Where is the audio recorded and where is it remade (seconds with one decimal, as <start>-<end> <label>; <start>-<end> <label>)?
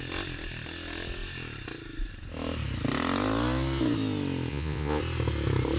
0.0-4.5 recorded; 4.5-5.0 remade; 5.0-5.8 recorded